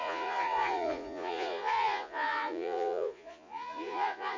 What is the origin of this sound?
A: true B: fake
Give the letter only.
B